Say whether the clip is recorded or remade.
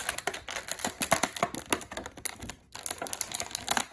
recorded